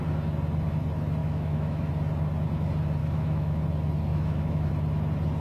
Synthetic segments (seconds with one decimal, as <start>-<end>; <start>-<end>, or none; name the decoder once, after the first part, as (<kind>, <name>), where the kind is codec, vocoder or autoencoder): 1.2-1.9 (autoencoder, DAC-VAE); 3.0-3.6; 4.1-4.7